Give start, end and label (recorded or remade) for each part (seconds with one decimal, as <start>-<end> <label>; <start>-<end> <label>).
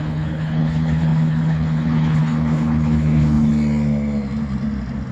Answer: 0.0-3.5 remade; 3.5-5.1 recorded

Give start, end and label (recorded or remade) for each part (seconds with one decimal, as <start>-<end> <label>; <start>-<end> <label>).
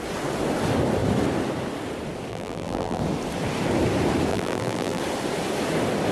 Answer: 0.0-2.3 recorded; 2.3-3.0 remade; 3.0-4.3 recorded; 4.3-5.0 remade; 5.0-6.1 recorded